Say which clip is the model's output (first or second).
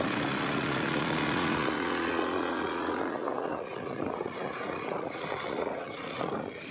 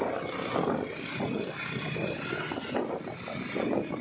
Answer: first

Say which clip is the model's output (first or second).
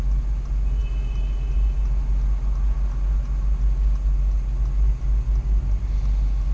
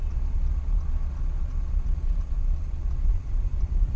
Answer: second